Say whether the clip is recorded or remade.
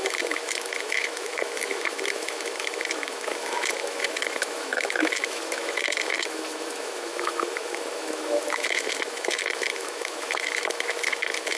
remade